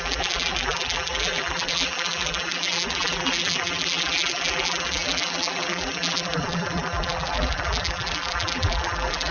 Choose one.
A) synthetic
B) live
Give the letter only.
A